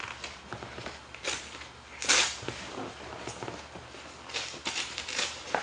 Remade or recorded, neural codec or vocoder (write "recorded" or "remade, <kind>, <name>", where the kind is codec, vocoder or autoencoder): recorded